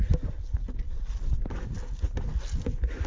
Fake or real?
real